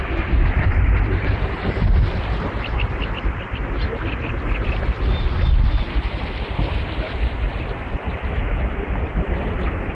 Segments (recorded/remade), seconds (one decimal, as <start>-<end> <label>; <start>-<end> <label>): 0.0-7.5 remade; 7.5-8.7 recorded; 8.7-9.9 remade